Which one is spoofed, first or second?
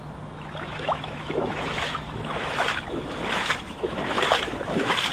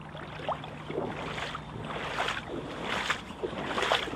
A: first